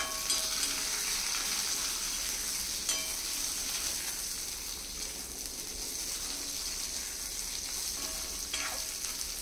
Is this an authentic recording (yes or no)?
yes